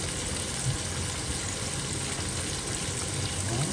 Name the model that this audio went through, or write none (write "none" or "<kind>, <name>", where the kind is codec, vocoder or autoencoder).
none